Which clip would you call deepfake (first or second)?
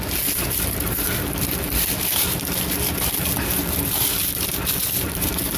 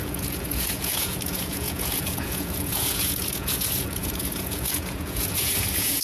second